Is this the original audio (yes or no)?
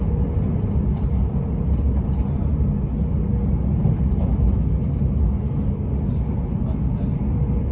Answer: yes